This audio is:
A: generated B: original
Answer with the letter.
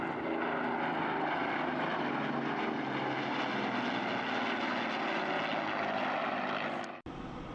B